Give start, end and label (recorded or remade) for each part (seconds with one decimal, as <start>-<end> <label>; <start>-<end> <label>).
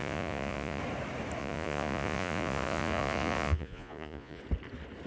0.0-0.8 remade; 0.8-1.4 recorded; 1.4-4.4 remade; 4.4-5.1 recorded